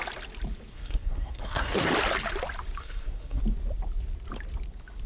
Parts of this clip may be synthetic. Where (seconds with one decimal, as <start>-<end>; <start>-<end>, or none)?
0.7-1.9; 2.8-3.4

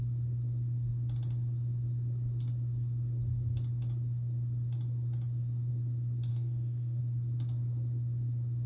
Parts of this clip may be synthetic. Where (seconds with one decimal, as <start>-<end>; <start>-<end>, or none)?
6.3-7.0

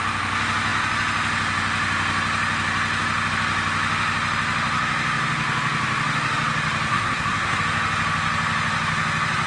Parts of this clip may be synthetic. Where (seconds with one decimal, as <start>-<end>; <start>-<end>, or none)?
6.9-7.6

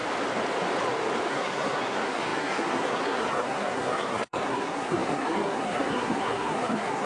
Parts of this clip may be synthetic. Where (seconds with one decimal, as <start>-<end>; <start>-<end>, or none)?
1.3-7.1

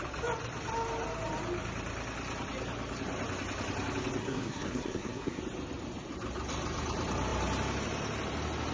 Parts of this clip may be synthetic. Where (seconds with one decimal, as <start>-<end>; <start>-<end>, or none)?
4.2-5.4

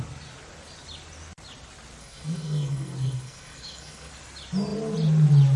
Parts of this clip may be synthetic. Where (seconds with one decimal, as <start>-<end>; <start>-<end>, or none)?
2.0-4.1